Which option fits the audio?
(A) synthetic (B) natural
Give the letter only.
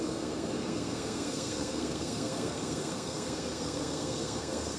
A